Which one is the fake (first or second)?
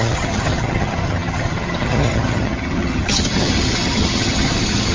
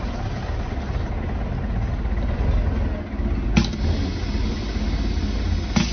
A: first